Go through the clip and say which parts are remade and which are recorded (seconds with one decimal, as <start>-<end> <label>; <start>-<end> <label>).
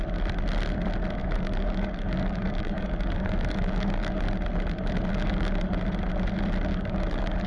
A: 0.0-1.2 recorded; 1.2-4.2 remade; 4.2-5.1 recorded; 5.1-5.6 remade; 5.6-6.7 recorded; 6.7-7.5 remade